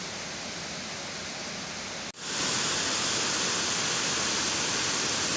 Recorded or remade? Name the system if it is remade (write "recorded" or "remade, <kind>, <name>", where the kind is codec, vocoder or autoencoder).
recorded